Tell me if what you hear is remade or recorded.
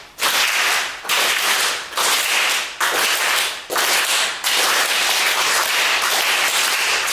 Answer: recorded